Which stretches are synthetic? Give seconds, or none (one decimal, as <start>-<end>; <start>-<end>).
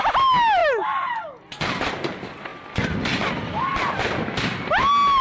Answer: none